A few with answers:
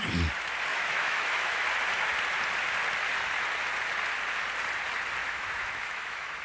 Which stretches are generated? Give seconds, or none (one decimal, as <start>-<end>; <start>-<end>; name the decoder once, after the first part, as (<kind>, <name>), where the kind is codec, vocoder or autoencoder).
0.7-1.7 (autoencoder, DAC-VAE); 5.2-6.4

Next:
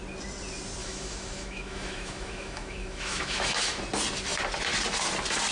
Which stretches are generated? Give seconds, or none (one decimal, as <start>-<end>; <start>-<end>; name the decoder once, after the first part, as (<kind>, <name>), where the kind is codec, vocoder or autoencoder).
0.8-3.8 (autoencoder, DAC-VAE)

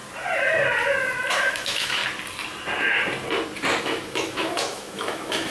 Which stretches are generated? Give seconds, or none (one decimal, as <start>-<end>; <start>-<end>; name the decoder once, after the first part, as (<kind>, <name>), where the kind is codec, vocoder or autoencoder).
1.3-2.0 (autoencoder, DAC-VAE); 3.8-5.5